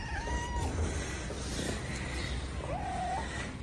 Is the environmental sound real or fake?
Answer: real